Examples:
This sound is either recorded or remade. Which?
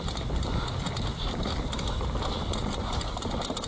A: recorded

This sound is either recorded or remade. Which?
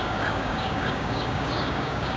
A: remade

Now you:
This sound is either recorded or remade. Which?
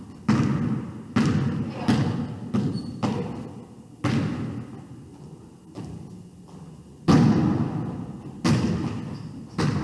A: recorded